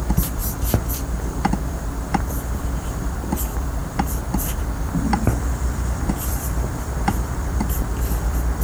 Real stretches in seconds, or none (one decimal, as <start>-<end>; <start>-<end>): 0.4-1.2